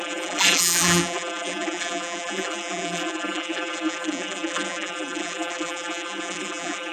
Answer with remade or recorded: remade